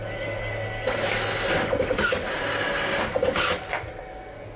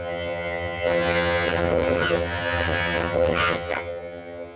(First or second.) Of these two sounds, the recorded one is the first